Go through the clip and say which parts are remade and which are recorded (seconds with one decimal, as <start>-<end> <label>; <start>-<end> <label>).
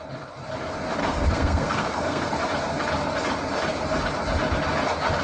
0.0-1.0 recorded; 1.0-2.3 remade; 2.3-5.2 recorded